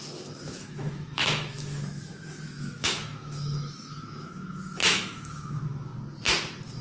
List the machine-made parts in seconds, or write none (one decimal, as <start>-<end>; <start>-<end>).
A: 0.0-5.9